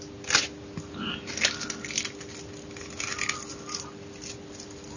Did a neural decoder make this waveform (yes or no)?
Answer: no